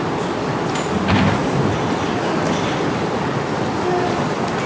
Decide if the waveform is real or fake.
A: real